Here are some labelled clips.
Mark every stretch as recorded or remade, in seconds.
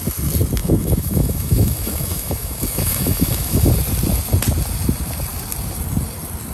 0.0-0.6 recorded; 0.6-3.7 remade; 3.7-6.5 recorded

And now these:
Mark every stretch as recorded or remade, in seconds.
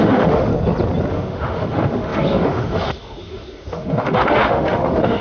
0.0-0.5 remade; 0.5-1.1 recorded; 1.1-5.2 remade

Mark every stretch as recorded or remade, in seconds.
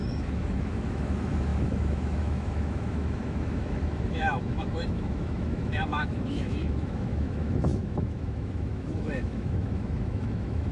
0.0-10.7 remade